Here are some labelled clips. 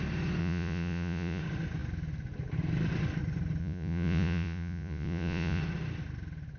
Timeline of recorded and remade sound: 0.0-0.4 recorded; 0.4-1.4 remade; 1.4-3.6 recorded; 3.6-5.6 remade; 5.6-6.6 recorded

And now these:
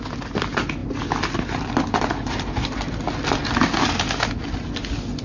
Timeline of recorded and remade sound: 0.0-5.2 recorded

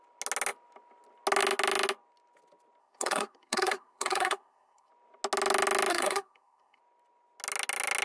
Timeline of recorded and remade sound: 0.0-2.8 recorded; 2.8-4.9 remade; 4.9-5.9 recorded; 5.9-6.8 remade; 6.8-8.0 recorded

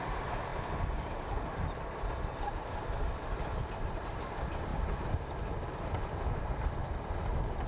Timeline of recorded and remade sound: 0.0-0.5 remade; 0.5-1.2 recorded; 1.2-7.7 remade